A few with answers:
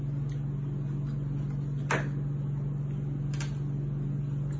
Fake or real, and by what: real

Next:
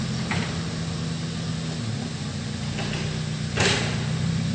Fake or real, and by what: real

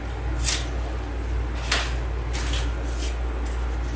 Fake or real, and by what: real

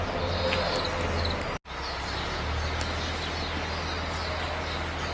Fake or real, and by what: real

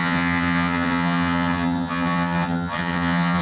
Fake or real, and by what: fake, vocoder, HiFi-GAN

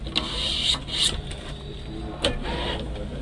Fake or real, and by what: real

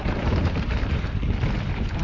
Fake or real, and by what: real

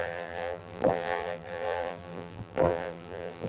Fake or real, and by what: fake, vocoder, BigVGAN v2